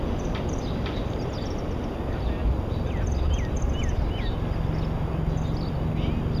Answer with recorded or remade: recorded